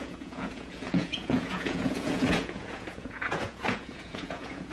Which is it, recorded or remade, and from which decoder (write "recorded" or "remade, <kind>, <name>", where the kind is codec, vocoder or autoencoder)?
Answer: remade, vocoder, Vocos